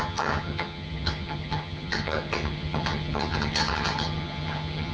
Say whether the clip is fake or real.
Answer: fake